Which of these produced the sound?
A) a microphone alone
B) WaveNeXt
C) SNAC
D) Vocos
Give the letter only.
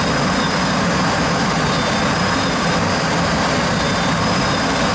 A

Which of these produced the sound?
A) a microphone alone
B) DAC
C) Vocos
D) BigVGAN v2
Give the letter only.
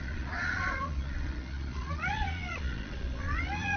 C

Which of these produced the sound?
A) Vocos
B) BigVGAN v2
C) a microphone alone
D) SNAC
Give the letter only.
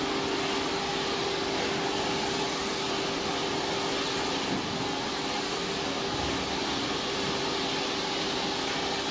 C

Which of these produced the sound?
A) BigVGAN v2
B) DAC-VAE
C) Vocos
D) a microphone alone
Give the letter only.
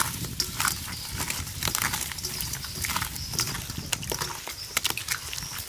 D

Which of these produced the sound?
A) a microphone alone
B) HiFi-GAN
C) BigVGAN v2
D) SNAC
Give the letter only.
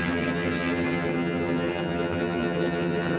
B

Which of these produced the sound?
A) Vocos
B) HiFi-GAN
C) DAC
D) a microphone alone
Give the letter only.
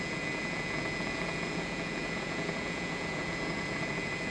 A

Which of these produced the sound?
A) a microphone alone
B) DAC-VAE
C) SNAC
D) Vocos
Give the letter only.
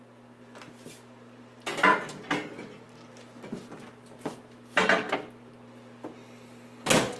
A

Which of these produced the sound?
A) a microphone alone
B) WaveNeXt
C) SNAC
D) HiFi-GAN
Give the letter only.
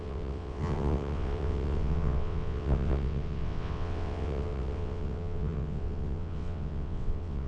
B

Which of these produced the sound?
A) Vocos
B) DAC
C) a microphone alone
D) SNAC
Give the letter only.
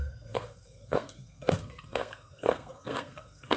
D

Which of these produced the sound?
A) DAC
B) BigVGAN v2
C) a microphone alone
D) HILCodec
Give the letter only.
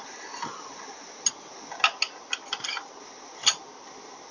C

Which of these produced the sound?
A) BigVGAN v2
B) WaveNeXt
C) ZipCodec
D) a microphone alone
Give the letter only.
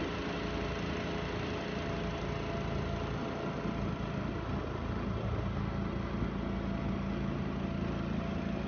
D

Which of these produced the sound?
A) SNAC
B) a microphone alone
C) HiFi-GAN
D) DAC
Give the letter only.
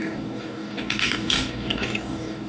D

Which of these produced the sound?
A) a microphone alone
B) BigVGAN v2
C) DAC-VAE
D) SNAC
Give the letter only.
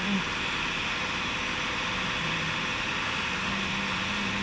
A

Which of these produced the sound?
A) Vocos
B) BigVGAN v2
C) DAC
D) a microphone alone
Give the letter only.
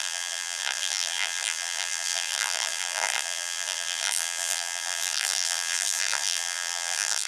B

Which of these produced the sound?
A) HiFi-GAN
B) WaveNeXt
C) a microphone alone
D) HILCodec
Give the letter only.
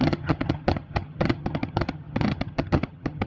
A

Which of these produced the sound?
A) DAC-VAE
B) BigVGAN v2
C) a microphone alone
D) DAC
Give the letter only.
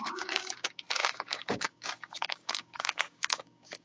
D